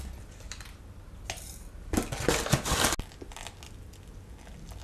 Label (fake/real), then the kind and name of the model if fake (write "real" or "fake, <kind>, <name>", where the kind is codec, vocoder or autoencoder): real